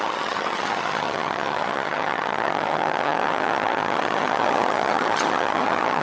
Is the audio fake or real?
fake